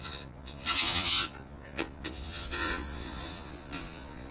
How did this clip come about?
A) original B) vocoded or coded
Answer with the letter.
B